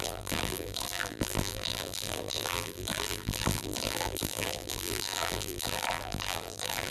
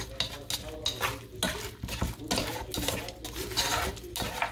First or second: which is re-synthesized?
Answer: first